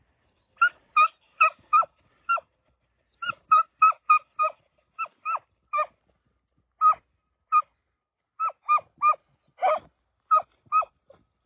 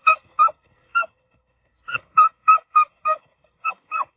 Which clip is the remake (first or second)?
second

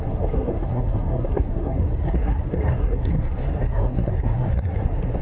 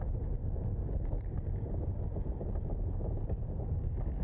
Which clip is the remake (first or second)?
first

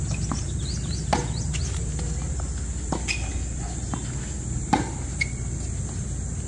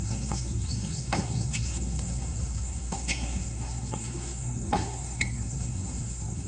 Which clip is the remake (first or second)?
second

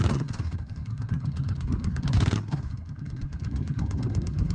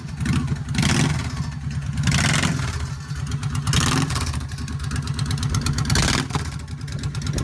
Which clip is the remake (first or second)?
first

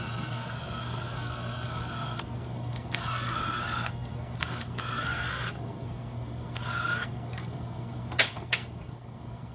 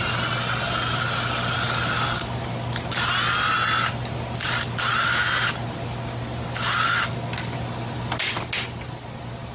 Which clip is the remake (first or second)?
first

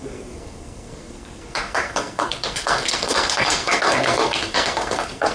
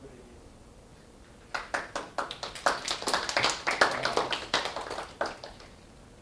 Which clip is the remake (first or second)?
first